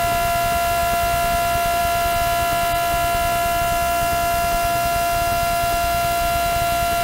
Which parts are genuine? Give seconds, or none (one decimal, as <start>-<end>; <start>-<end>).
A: 0.0-7.0